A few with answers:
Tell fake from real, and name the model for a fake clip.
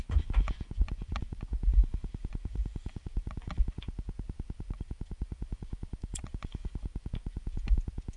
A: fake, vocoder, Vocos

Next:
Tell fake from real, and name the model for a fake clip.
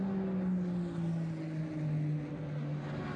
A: real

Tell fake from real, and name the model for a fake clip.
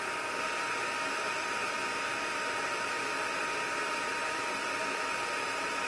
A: fake, vocoder, BigVGAN v2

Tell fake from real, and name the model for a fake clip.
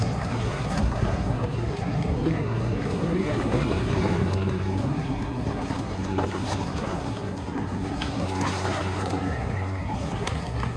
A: fake, codec, SNAC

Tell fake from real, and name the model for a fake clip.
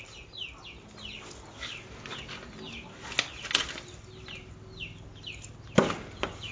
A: real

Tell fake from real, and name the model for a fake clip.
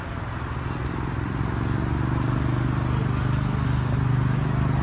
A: real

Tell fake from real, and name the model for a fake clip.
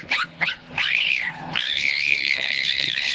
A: fake, codec, HILCodec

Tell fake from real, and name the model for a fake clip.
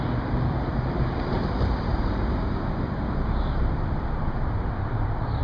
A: fake, vocoder, BigVGAN v2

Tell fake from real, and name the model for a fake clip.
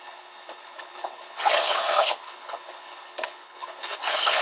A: fake, codec, HILCodec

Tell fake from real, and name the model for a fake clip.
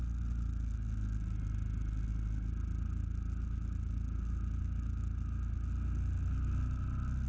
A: real